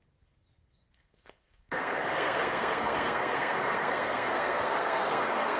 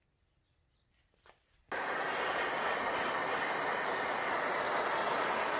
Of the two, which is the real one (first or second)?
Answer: second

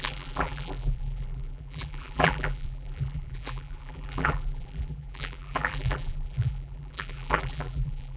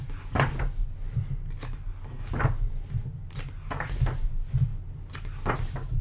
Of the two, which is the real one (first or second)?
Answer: second